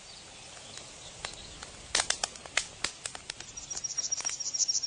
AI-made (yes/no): no